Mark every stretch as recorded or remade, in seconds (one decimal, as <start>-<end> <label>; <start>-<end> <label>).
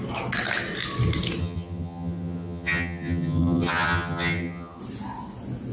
0.0-1.4 recorded; 1.4-4.8 remade; 4.8-5.7 recorded